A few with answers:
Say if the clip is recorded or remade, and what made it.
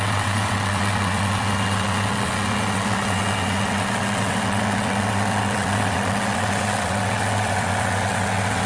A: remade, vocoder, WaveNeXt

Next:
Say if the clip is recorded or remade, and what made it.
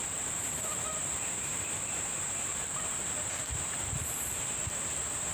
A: remade, vocoder, BigVGAN v2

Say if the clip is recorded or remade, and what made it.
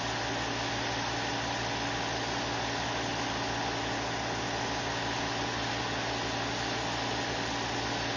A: recorded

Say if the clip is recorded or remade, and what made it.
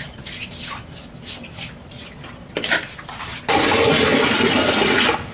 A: recorded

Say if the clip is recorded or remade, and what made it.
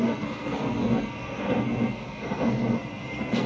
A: remade, codec, SNAC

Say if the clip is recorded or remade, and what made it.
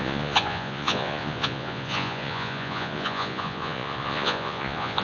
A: remade, vocoder, Vocos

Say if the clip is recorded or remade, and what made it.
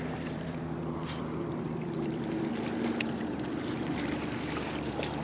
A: remade, vocoder, BigVGAN v2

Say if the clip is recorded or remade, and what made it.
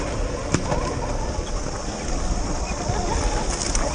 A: recorded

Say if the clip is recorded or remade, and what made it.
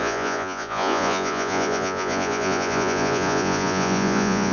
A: remade, vocoder, Vocos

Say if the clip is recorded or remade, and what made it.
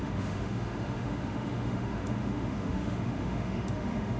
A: remade, autoencoder, DAC-VAE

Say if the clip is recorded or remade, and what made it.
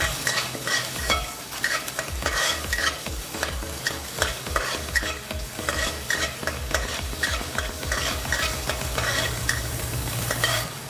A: remade, codec, DAC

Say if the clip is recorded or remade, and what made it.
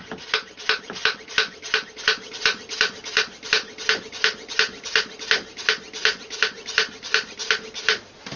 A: recorded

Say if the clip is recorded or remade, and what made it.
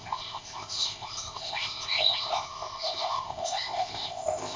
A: remade, codec, ZipCodec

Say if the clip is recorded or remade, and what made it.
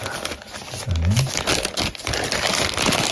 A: recorded